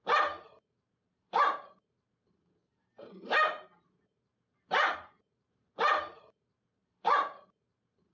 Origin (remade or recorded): remade